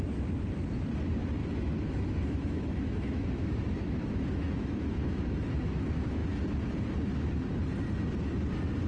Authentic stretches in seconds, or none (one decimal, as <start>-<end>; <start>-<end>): 0.0-1.4; 5.8-8.9